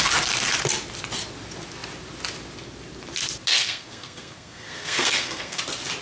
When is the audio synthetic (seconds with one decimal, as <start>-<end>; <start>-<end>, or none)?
3.5-5.6